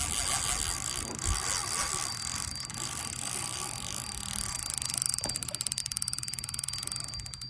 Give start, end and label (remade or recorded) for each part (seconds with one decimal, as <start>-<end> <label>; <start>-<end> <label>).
0.0-1.6 recorded; 1.6-3.4 remade; 3.4-5.8 recorded; 5.8-7.5 remade